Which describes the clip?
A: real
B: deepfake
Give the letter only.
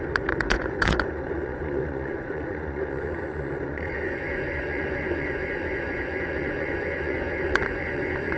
B